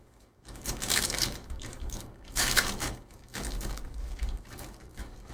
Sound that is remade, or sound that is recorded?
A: remade